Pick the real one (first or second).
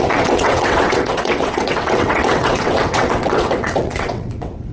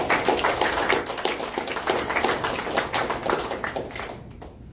second